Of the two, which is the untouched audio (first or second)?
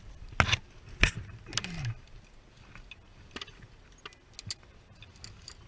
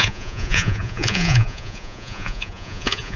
first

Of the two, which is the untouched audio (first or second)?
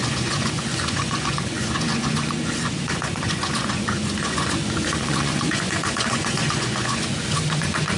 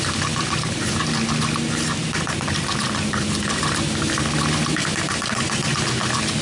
second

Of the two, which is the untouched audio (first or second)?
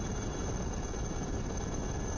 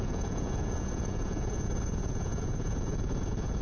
first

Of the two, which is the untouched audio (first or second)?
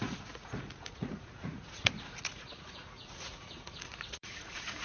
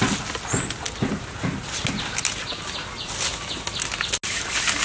second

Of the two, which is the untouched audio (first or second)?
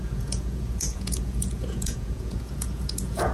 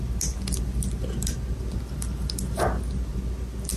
second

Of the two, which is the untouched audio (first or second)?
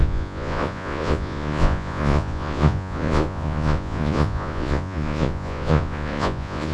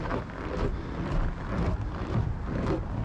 second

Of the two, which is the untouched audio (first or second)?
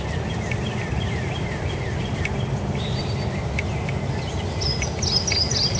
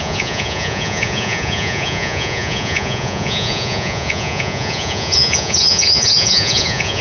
first